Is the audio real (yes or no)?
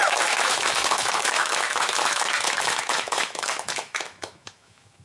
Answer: no